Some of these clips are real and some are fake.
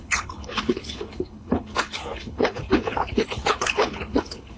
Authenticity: fake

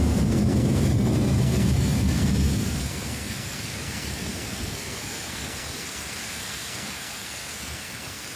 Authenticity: fake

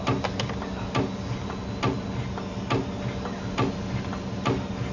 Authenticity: real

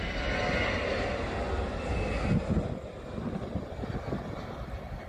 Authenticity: real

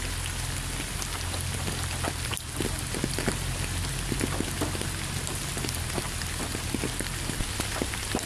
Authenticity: real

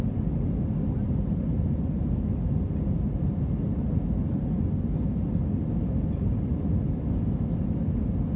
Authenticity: real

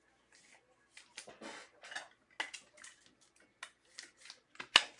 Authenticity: real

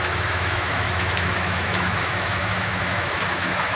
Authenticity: fake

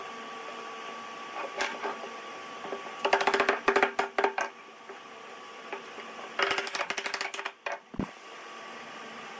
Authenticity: real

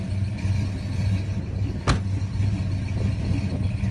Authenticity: real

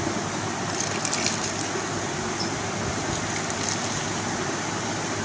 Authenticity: real